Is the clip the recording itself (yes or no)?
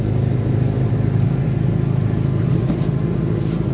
yes